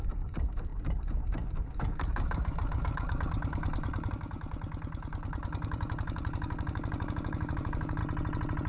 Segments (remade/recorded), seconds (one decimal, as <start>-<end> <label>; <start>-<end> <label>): 0.0-8.0 remade; 8.0-8.7 recorded